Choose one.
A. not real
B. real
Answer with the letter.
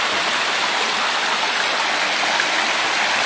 B